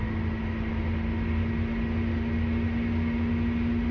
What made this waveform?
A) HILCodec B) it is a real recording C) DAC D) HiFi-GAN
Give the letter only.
B